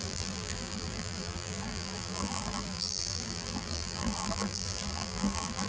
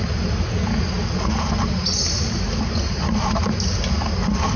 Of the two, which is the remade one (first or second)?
first